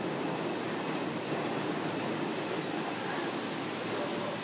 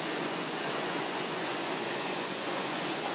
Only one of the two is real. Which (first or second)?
first